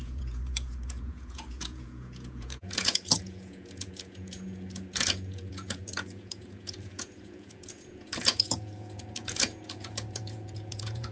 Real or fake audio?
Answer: fake